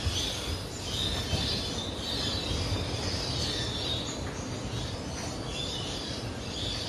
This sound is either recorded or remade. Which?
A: recorded